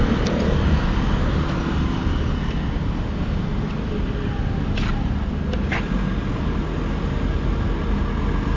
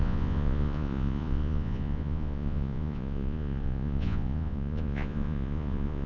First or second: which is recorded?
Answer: first